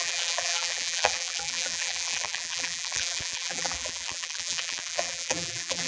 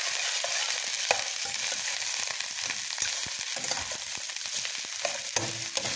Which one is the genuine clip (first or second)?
second